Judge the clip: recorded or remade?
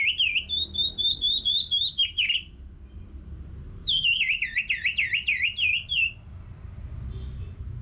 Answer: remade